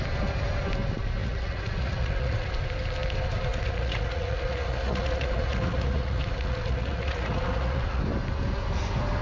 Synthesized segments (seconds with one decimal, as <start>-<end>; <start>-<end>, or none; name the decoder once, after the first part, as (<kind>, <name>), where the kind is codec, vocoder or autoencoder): 1.2-2.5 (vocoder, Vocos); 3.5-8.0